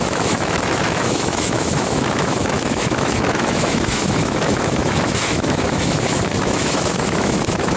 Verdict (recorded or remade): remade